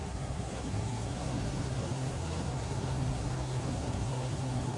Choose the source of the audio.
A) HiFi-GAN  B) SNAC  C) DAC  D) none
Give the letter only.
B